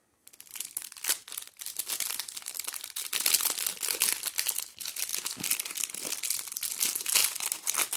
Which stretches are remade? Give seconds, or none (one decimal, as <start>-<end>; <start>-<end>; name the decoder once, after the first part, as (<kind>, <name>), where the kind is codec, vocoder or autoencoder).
none